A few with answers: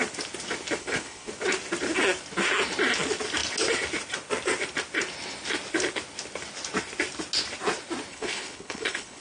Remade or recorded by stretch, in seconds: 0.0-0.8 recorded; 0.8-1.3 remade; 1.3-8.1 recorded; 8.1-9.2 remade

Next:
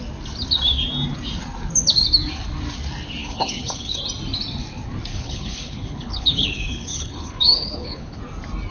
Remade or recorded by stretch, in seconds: 0.0-3.2 recorded; 3.2-4.0 remade; 4.0-5.1 recorded; 5.1-8.2 remade; 8.2-8.7 recorded

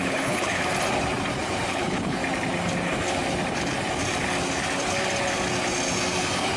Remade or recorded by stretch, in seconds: 0.0-0.6 remade; 0.6-1.7 recorded; 1.7-2.2 remade; 2.2-6.6 recorded

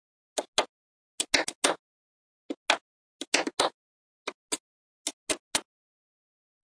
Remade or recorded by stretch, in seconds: 0.0-6.6 recorded